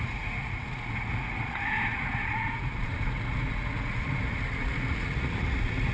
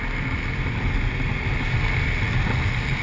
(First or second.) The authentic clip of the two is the second